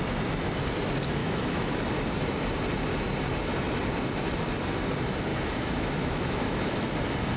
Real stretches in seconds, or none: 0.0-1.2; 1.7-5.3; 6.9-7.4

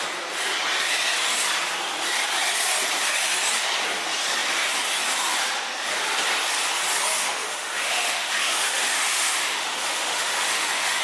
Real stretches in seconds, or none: 0.0-7.2